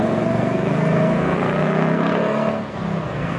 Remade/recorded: remade